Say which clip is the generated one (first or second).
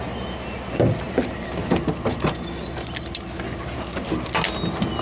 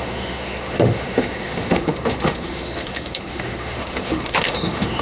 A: second